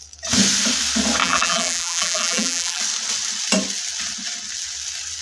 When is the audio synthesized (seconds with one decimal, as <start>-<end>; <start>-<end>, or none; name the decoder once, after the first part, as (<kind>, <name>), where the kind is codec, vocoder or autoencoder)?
1.2-2.8 (vocoder, BigVGAN v2)